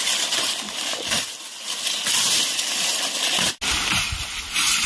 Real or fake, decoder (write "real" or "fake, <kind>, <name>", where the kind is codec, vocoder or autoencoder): real